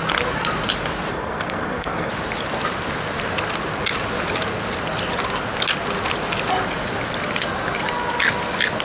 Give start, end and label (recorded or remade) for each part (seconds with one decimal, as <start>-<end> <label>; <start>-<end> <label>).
0.0-1.1 recorded; 1.1-2.1 remade; 2.1-8.8 recorded